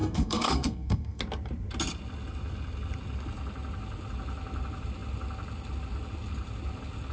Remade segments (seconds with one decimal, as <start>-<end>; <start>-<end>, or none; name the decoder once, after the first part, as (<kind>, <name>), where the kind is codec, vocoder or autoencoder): 0.0-1.2 (codec, SNAC)